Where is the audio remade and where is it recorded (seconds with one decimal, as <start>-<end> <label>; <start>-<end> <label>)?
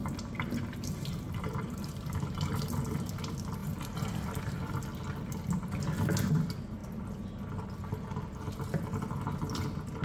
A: 0.0-2.5 remade; 2.5-3.6 recorded; 3.6-4.8 remade; 4.8-10.0 recorded